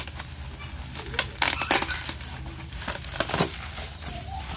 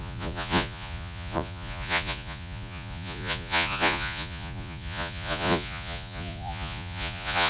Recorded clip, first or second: first